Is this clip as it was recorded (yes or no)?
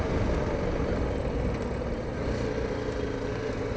yes